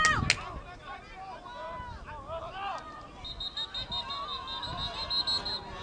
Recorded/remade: recorded